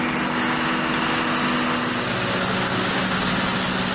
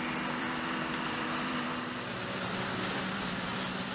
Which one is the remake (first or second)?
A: second